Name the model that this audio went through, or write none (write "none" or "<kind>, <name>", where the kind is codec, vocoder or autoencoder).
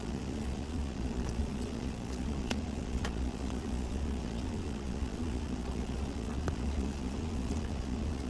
vocoder, Vocos